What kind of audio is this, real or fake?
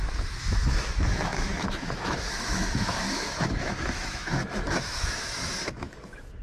fake